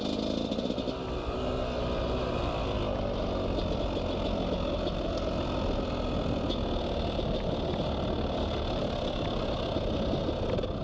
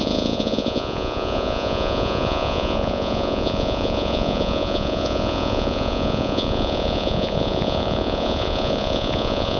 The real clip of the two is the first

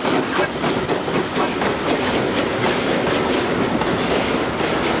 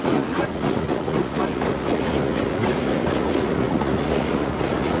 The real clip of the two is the first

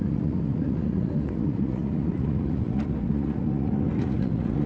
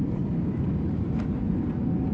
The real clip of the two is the second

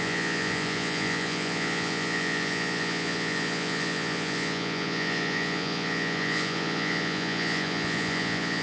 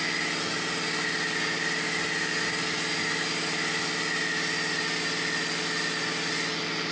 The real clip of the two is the second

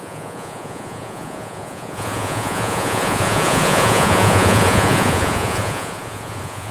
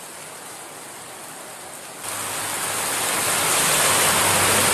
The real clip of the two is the second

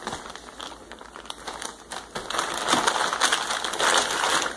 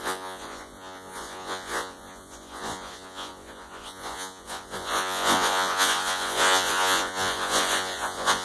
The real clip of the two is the first